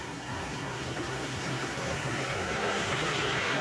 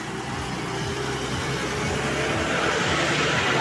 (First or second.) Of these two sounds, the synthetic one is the first